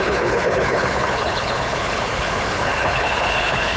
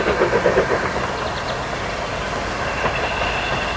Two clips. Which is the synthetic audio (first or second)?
first